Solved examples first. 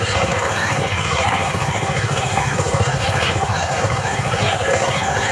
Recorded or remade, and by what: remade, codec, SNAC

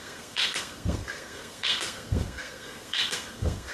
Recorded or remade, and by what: remade, codec, SNAC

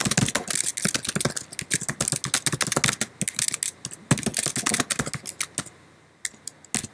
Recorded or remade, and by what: recorded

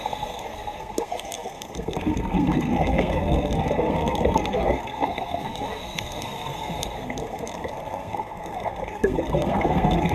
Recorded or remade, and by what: remade, codec, SNAC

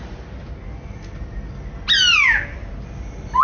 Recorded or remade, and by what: recorded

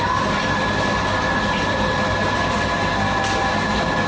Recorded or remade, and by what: recorded